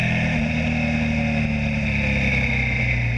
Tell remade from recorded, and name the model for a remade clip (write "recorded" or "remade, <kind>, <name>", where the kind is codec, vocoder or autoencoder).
recorded